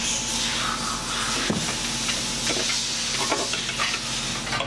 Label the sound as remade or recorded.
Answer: recorded